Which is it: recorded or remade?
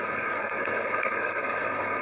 remade